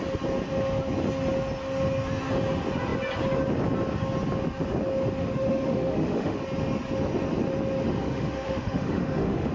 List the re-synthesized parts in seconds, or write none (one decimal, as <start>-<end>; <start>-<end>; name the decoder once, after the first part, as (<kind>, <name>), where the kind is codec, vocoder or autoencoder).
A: 5.2-6.4 (autoencoder, DAC-VAE); 8.0-9.5